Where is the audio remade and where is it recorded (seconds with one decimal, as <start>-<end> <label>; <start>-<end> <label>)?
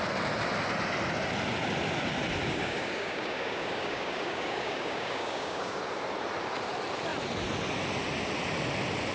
0.0-2.4 recorded; 2.4-5.8 remade; 5.8-9.1 recorded